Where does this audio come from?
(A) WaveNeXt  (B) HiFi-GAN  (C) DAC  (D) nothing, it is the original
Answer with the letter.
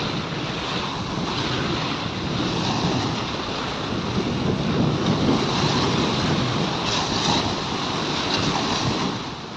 D